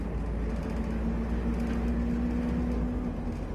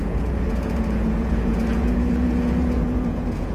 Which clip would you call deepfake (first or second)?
second